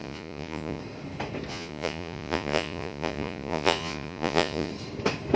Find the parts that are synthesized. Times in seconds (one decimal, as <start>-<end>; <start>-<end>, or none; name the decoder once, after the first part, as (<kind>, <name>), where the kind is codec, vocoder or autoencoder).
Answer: 0.0-0.8 (vocoder, Vocos); 1.5-4.7